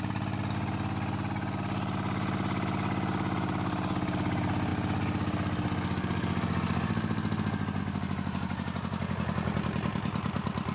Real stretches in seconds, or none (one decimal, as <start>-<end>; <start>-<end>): 0.0-10.7